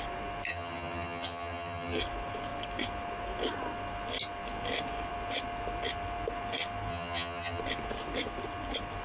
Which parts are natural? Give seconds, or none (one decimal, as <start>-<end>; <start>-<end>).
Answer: 0.0-0.5; 2.0-6.9; 7.6-9.0